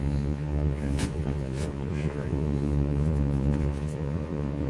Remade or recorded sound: remade